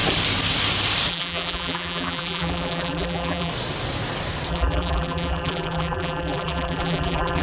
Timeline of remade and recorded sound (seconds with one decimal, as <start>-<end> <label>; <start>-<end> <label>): 0.0-1.1 recorded; 1.1-3.5 remade; 3.5-4.5 recorded; 4.5-7.4 remade